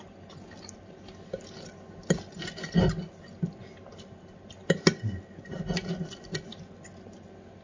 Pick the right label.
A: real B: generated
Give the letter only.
A